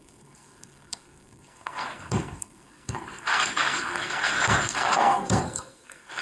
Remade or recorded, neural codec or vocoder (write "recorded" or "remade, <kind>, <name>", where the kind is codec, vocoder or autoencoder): remade, codec, SNAC